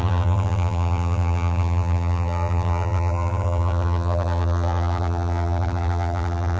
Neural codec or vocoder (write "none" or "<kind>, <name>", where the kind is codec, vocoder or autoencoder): vocoder, BigVGAN v2